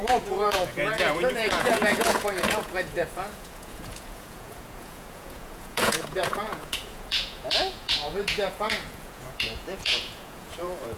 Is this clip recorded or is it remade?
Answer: remade